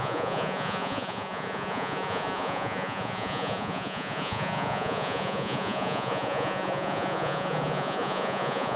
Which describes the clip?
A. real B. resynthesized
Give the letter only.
B